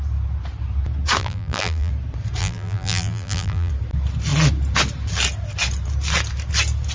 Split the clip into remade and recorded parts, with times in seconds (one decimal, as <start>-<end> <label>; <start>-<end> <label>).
0.0-1.2 recorded; 1.2-1.9 remade; 1.9-2.4 recorded; 2.4-3.7 remade; 3.7-6.9 recorded